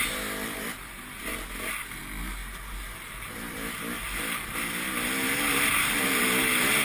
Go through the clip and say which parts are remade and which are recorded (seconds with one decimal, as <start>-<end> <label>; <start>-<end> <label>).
0.0-6.8 recorded